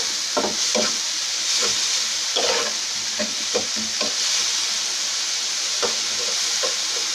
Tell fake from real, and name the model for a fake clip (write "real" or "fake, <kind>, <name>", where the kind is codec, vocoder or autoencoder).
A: real